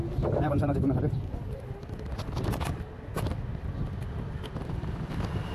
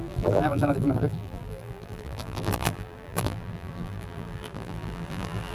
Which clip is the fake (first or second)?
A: second